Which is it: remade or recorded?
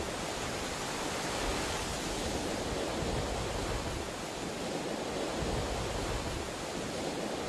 recorded